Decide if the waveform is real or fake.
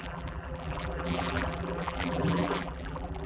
fake